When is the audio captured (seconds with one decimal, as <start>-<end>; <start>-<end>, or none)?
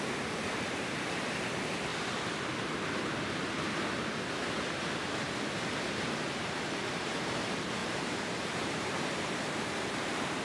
1.9-6.4